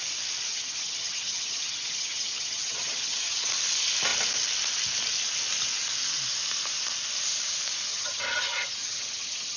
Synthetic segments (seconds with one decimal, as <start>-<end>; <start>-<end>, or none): 0.5-3.5; 7.9-9.6